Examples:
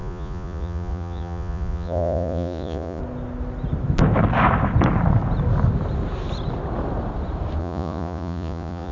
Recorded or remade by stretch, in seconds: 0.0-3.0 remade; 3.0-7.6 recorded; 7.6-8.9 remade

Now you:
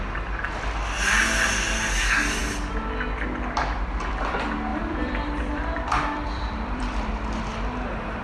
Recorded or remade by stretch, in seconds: 0.0-4.7 recorded; 4.7-8.2 remade